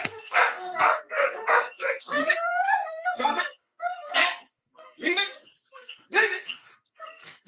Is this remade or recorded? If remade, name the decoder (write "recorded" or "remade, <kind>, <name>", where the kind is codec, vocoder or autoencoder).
remade, codec, SNAC